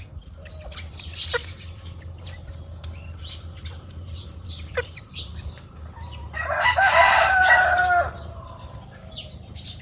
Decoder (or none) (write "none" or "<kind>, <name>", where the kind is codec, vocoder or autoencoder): vocoder, BigVGAN v2